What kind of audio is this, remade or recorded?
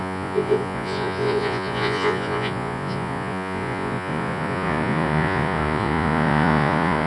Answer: remade